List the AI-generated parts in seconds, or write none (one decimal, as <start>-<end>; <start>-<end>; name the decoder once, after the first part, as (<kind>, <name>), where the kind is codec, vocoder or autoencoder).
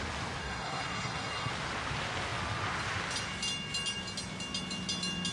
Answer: 0.4-1.5 (codec, SNAC)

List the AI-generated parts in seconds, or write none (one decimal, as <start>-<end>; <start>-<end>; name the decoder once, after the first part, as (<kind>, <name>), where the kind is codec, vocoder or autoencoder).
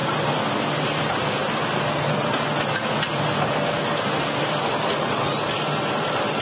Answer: 3.7-6.4 (vocoder, BigVGAN v2)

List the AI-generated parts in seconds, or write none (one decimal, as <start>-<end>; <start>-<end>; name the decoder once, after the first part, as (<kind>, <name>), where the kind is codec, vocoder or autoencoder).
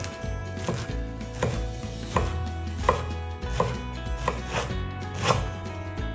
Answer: none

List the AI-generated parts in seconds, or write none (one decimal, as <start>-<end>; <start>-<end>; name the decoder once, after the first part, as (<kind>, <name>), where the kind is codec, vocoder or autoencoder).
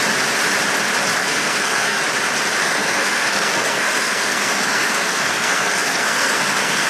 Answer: 1.2-2.0 (codec, SNAC); 2.6-6.9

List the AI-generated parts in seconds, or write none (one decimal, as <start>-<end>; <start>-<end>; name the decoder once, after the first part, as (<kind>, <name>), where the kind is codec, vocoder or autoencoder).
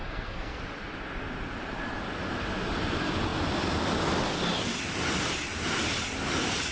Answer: 0.0-0.6 (codec, SNAC)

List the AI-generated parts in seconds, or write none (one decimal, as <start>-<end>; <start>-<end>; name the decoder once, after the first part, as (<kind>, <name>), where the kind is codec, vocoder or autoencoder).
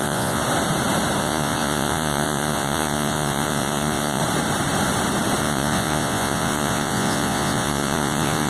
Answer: 0.0-0.4 (vocoder, Vocos); 1.2-4.2; 5.4-8.5